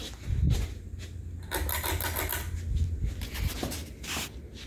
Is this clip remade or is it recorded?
recorded